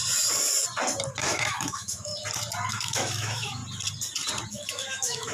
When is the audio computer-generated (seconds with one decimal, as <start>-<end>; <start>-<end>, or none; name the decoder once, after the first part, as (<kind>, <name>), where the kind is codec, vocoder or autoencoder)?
1.2-2.1 (autoencoder, DAC-VAE); 2.7-3.6; 4.5-5.3